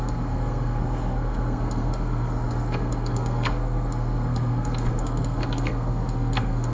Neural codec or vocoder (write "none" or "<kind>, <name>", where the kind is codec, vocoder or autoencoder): codec, SNAC